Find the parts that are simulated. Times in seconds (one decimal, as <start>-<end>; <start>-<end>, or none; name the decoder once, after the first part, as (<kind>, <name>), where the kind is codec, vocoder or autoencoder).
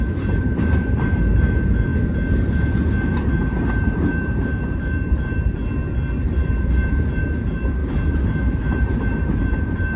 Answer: 0.0-1.9 (vocoder, BigVGAN v2); 3.4-5.6; 6.2-7.8; 8.5-10.0